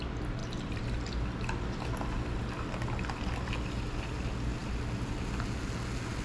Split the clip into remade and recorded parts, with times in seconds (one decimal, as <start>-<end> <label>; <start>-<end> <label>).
0.0-6.2 recorded